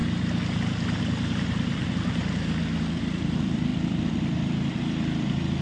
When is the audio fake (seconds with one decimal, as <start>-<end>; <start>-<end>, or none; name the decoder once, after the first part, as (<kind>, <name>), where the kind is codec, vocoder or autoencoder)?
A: 1.0-1.8 (vocoder, BigVGAN v2); 2.7-5.6